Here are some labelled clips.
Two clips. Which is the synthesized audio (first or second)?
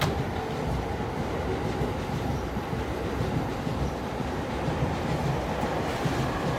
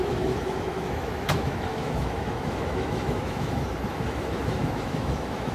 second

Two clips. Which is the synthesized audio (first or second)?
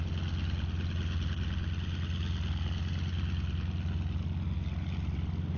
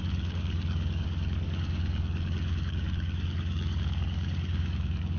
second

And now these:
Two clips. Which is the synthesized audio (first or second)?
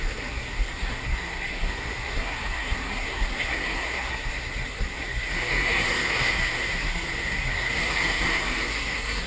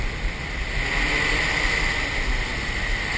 first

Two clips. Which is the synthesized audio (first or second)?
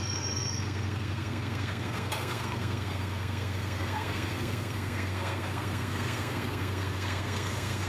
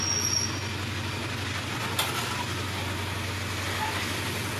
first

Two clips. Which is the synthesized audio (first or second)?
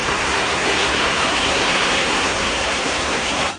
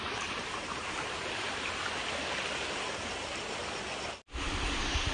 first